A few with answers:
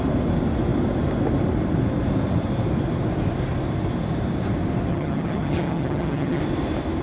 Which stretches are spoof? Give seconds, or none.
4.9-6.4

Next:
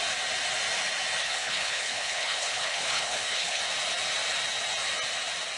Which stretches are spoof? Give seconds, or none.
1.2-3.6